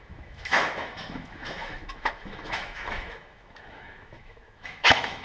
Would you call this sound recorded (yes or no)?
no